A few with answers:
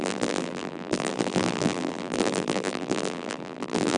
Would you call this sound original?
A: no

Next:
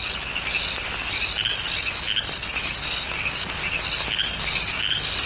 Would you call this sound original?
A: yes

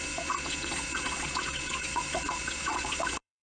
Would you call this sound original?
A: no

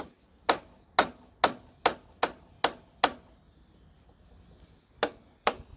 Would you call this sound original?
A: yes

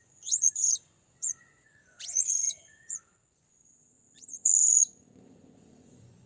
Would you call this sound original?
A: no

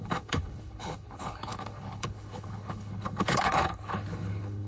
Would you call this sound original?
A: no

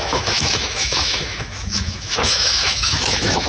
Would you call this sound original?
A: no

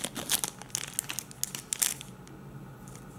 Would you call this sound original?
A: yes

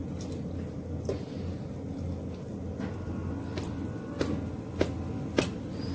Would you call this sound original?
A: yes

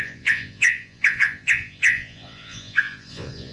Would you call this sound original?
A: no